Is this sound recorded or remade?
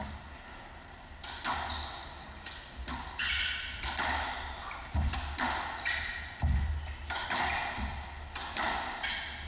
recorded